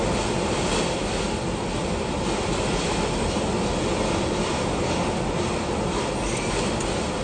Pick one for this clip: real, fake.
real